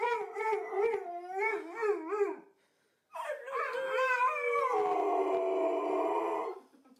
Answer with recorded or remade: recorded